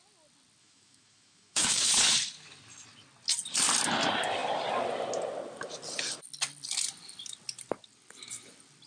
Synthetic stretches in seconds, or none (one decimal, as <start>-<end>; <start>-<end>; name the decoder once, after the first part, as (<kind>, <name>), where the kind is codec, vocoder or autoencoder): 0.6-1.9 (autoencoder, DAC-VAE)